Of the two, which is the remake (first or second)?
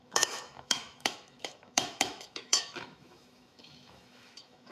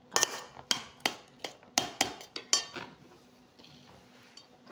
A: first